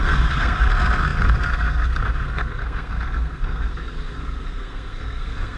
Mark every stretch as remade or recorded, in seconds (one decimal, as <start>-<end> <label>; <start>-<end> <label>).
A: 0.0-5.6 remade